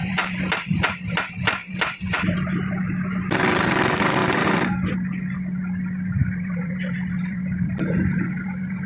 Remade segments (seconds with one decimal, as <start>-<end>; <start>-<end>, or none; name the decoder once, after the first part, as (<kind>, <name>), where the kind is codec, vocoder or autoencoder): 0.0-1.2 (vocoder, BigVGAN v2); 1.6-2.8; 6.2-8.9